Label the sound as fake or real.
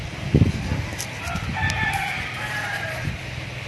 real